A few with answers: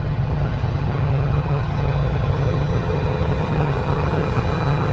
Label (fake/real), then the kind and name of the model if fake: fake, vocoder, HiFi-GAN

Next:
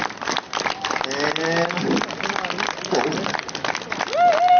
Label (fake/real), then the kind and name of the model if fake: real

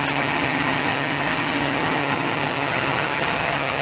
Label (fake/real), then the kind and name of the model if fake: fake, vocoder, HiFi-GAN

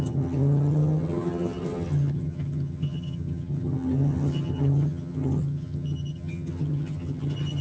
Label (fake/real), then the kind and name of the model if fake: fake, vocoder, HiFi-GAN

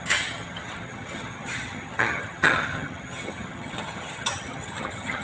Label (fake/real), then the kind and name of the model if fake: fake, vocoder, HiFi-GAN